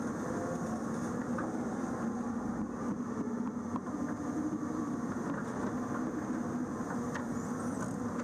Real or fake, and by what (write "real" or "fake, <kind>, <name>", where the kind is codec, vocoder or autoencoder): real